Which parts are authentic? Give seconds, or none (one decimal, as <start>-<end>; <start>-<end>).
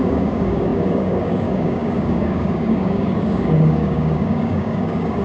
none